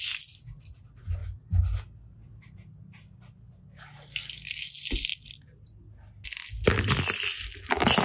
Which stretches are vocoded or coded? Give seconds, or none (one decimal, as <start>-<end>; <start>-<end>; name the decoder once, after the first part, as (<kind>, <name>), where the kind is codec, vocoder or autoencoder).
none